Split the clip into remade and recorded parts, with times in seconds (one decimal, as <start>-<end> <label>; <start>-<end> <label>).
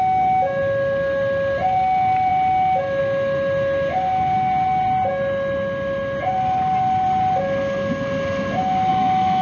0.0-8.9 recorded; 8.9-9.4 remade